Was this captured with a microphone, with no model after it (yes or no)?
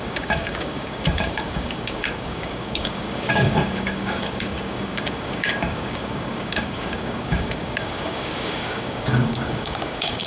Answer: no